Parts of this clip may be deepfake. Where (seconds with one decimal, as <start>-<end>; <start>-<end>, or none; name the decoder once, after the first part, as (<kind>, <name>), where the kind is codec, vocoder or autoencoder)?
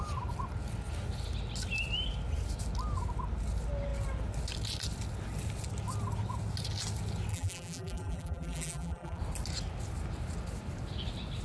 7.3-9.2 (vocoder, BigVGAN v2)